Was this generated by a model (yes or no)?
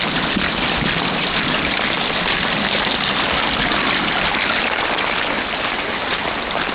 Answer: no